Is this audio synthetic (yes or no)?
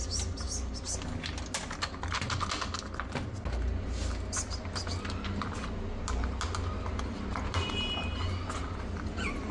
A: no